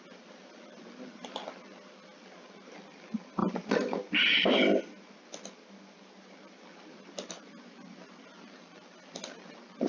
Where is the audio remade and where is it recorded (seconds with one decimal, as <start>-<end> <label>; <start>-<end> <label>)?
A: 0.0-9.9 recorded